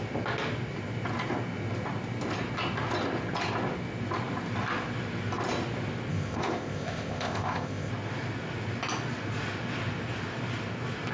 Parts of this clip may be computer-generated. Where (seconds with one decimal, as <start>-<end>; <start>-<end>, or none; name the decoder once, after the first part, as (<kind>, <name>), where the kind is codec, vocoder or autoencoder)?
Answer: 6.1-7.9 (codec, ZipCodec)

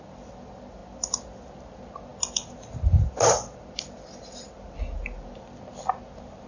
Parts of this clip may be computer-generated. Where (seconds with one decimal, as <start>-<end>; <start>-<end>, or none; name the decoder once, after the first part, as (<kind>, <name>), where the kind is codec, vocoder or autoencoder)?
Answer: none

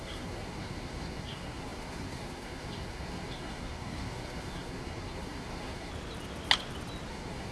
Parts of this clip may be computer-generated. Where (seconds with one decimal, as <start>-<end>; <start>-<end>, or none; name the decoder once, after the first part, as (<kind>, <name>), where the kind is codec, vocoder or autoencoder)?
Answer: 0.0-5.9 (codec, SNAC); 7.1-7.5

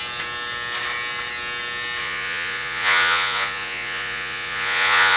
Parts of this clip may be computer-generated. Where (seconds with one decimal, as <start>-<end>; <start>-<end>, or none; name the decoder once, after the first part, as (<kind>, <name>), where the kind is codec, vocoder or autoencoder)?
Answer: 2.0-5.2 (vocoder, Vocos)

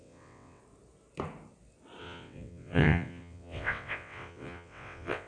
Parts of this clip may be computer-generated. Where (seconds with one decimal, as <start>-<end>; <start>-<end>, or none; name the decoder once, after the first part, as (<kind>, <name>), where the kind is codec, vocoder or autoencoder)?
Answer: 0.0-0.6 (vocoder, WaveNeXt); 2.0-5.3

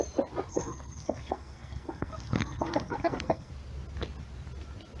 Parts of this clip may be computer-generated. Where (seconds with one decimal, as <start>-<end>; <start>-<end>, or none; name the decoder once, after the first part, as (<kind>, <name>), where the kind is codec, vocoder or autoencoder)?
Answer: 0.5-3.5 (codec, SNAC)

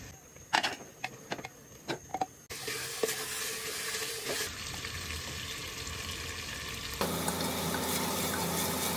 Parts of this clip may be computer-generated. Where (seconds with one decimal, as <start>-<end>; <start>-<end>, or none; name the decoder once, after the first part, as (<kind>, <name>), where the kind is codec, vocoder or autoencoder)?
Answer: none

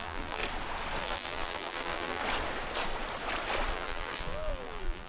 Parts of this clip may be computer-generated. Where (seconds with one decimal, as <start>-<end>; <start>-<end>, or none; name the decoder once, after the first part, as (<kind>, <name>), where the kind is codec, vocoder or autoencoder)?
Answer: 0.0-0.4 (vocoder, BigVGAN v2); 1.0-2.2; 3.7-5.1